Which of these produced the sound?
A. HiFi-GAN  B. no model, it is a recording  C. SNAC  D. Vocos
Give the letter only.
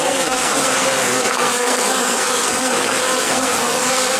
C